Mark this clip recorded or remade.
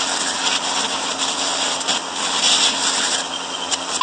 recorded